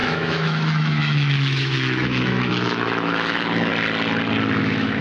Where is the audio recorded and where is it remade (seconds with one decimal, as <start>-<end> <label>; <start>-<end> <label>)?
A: 0.0-3.7 remade; 3.7-4.6 recorded; 4.6-5.0 remade